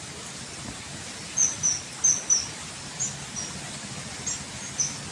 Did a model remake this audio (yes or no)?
no